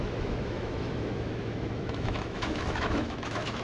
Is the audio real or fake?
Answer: fake